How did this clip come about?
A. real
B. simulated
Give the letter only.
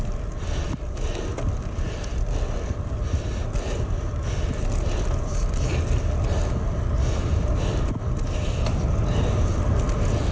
A